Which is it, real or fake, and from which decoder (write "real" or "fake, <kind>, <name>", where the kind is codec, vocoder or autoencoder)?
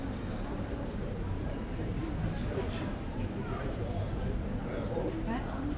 fake, vocoder, BigVGAN v2